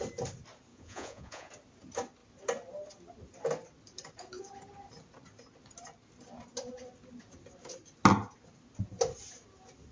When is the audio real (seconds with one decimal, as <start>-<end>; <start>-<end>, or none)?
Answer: 0.0-0.7; 1.5-9.9